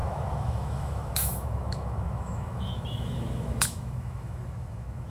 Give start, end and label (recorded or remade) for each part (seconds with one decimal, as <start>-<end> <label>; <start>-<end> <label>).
0.0-5.1 remade